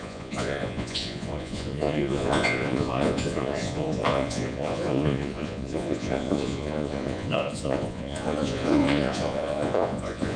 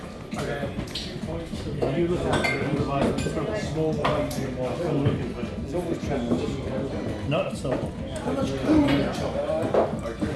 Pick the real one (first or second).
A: second